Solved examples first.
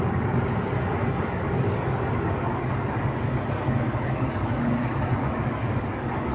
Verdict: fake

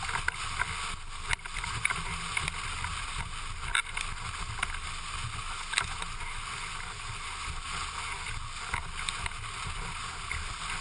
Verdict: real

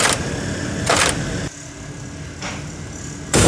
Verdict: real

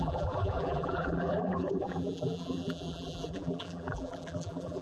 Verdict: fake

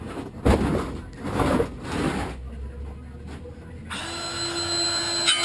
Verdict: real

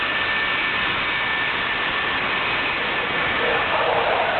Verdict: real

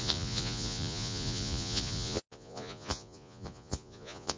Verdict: fake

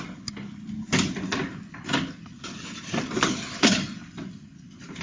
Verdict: real